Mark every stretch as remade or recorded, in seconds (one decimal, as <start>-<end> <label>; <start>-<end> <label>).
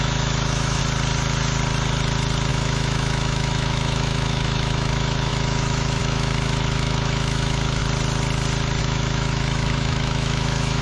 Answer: 0.0-0.8 remade; 0.8-2.5 recorded; 2.5-7.8 remade; 7.8-8.8 recorded; 8.8-10.8 remade